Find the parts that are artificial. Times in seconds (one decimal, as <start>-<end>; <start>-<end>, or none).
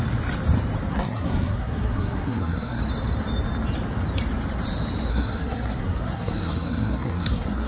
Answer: 0.9-2.8; 5.1-7.7